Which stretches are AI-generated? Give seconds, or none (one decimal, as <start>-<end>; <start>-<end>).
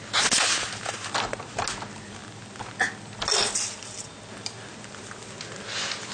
none